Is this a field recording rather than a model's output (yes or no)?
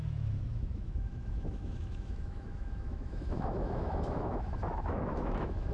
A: no